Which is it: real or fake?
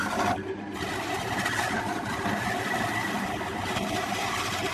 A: real